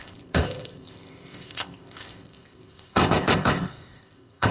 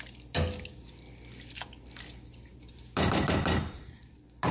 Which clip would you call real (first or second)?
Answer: second